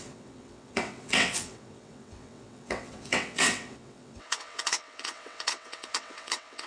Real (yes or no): no